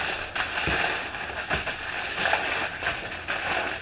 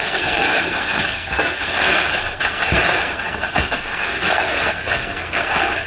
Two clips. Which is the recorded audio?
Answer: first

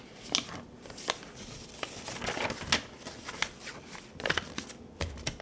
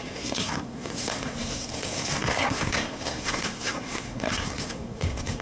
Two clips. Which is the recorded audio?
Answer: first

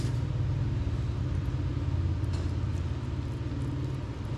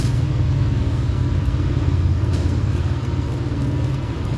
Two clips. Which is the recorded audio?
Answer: first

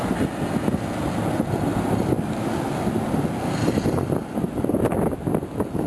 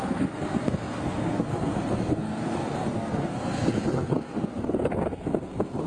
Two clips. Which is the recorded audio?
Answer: first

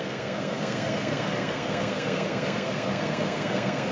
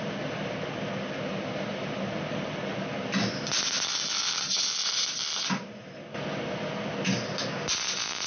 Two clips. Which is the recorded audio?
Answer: second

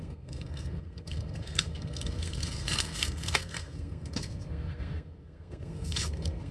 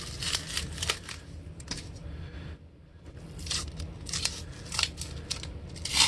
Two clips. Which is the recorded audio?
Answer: second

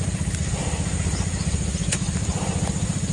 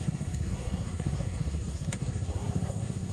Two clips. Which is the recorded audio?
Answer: first